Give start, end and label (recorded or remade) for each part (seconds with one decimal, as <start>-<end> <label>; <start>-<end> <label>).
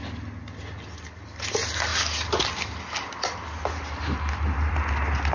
0.0-5.3 recorded